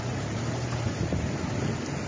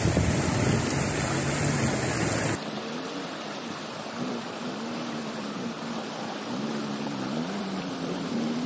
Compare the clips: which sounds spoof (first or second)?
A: second